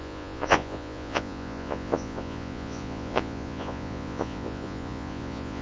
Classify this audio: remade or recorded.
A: remade